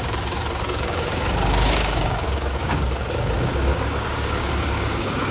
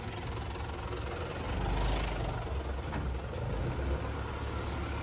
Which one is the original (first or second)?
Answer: second